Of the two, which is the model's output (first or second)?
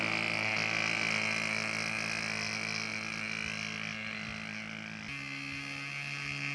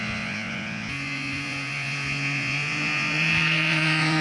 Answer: second